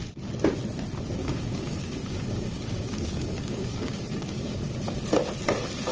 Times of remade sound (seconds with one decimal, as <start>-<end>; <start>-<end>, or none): 1.2-4.7